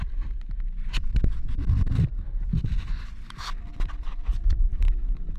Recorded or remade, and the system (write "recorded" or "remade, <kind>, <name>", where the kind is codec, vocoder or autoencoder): recorded